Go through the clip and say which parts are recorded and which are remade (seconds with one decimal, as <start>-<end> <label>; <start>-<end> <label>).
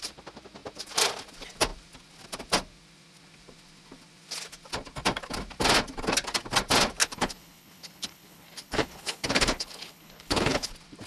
0.0-7.0 recorded; 7.0-10.7 remade; 10.7-11.1 recorded